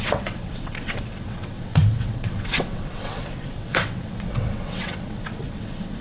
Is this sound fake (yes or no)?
yes